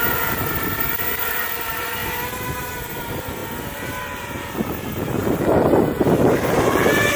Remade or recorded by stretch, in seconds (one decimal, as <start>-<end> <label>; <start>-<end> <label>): 0.0-2.0 remade; 2.0-3.0 recorded; 3.0-5.2 remade; 5.2-7.2 recorded